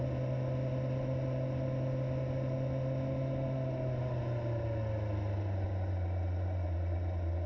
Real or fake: real